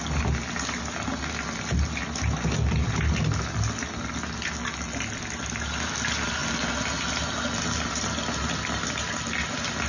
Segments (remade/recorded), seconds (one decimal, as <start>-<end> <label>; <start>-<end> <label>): 0.0-9.9 recorded